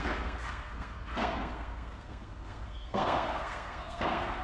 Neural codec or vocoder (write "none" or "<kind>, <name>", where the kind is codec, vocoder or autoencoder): codec, SNAC